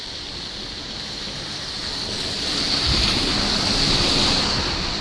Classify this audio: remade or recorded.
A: recorded